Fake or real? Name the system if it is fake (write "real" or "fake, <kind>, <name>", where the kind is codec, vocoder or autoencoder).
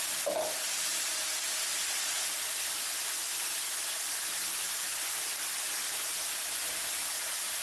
real